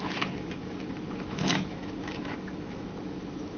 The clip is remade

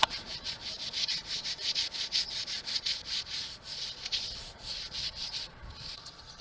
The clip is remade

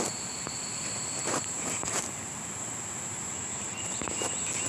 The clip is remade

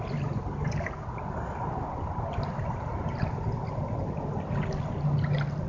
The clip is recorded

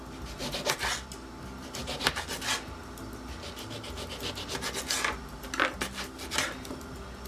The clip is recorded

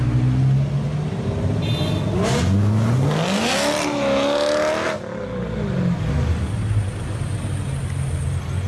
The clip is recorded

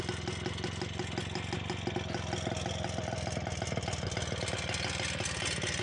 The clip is recorded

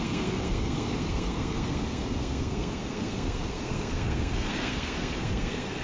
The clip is remade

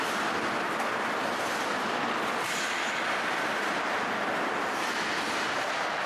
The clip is recorded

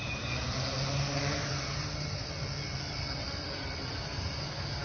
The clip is recorded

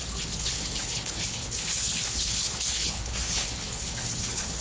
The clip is remade